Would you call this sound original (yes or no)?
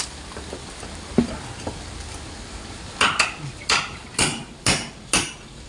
yes